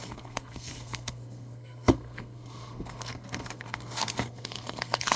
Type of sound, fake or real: fake